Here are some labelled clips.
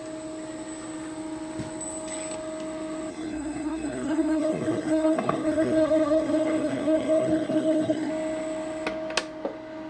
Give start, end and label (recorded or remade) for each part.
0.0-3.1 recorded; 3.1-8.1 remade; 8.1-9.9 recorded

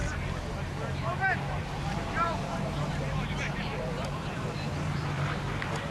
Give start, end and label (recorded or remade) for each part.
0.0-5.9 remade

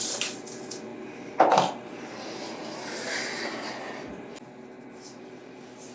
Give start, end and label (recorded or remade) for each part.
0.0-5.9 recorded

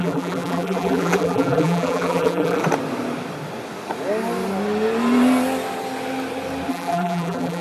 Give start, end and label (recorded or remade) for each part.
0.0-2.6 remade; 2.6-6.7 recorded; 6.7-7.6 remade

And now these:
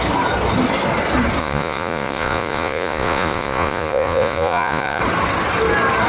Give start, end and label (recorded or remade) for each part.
0.0-1.4 recorded; 1.4-5.0 remade; 5.0-6.1 recorded

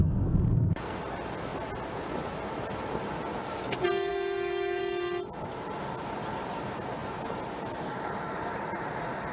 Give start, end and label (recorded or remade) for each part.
0.0-1.0 remade; 1.0-4.1 recorded; 4.1-4.8 remade; 4.8-9.3 recorded

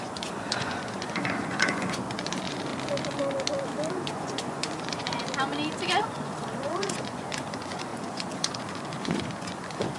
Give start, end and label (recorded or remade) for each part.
0.0-2.7 remade; 2.7-3.9 recorded; 3.9-5.2 remade; 5.2-6.0 recorded; 6.0-10.0 remade

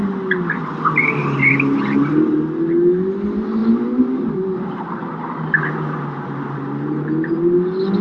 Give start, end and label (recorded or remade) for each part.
0.0-8.0 recorded